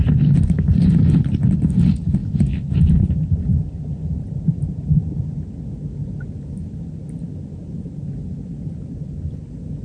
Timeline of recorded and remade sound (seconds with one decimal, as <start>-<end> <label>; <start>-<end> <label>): 0.0-9.8 recorded